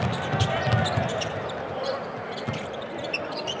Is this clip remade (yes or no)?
no